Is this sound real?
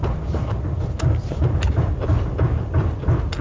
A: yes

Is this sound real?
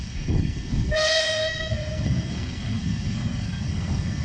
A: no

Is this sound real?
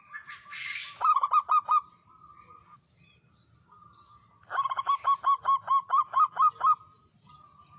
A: yes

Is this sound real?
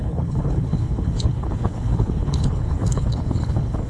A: no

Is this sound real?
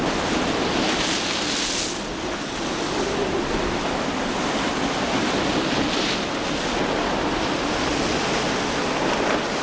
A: yes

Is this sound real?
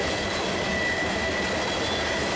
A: yes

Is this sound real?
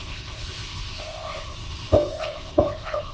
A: no